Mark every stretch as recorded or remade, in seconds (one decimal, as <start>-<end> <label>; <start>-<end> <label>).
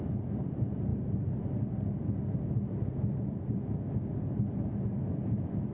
0.0-5.7 recorded